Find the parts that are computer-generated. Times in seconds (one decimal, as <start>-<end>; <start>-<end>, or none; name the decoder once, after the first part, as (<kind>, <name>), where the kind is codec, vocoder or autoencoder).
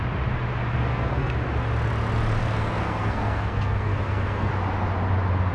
0.7-1.3 (codec, SNAC); 2.4-4.5